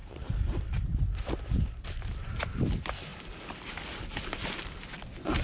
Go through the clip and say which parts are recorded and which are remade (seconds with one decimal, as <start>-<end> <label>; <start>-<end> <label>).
0.0-1.8 remade; 1.8-5.4 recorded